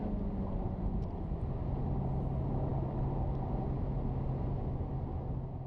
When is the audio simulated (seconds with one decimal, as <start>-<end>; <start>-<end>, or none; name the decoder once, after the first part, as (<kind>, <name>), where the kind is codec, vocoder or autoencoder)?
none